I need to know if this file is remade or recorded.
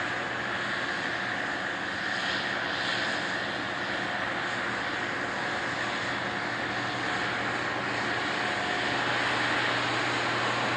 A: recorded